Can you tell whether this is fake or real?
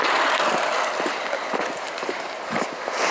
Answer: real